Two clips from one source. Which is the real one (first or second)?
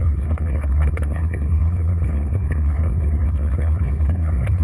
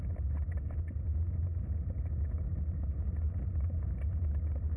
second